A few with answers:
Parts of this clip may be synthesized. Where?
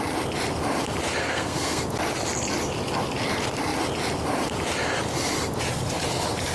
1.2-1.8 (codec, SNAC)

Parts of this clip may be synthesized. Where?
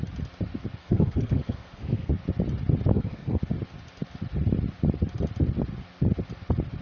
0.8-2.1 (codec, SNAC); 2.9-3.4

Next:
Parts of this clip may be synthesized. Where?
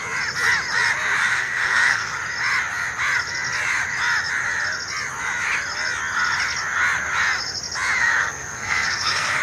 1.3-2.2 (codec, SNAC); 8.2-9.4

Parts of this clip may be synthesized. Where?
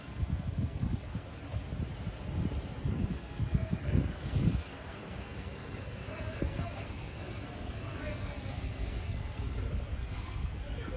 0.0-1.4 (codec, SNAC); 2.9-11.0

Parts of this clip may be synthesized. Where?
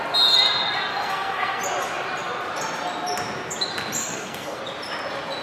0.9-1.6 (codec, SNAC); 4.0-4.6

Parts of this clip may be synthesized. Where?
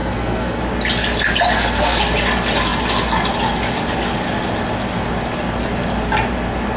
0.0-0.6 (codec, SNAC); 1.5-2.0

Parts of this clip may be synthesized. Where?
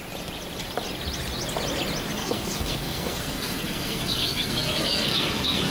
2.2-5.7 (codec, SNAC)